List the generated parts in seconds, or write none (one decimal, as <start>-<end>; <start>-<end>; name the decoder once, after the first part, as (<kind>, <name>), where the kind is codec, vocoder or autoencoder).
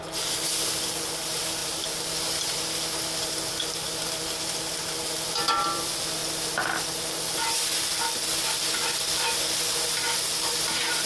none